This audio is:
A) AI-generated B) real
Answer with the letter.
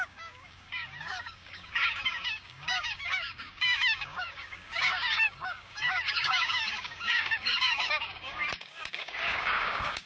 A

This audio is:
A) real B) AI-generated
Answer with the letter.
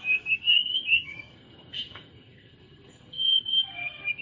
B